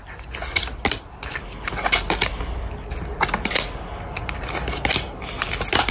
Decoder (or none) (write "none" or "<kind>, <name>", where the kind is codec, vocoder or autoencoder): none